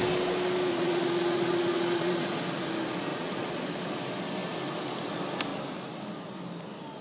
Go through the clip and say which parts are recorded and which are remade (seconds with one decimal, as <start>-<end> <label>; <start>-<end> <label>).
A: 0.0-0.7 recorded; 0.7-2.4 remade; 2.4-3.1 recorded; 3.1-3.6 remade; 3.6-7.0 recorded